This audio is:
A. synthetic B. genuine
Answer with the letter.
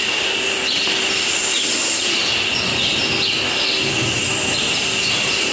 B